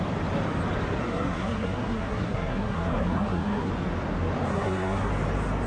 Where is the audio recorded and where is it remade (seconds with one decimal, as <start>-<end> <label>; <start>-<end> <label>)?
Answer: 0.0-1.0 recorded; 1.0-3.7 remade; 3.7-4.5 recorded; 4.5-5.1 remade; 5.1-5.7 recorded